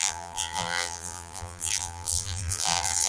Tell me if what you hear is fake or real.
fake